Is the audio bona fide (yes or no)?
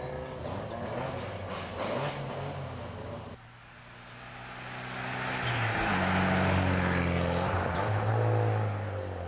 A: yes